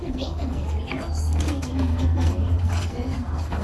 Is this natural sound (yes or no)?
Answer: no